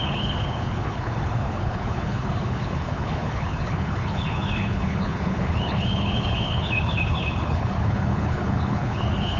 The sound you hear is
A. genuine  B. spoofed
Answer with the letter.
B